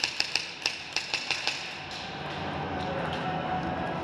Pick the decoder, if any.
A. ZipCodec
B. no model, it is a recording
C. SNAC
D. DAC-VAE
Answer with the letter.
B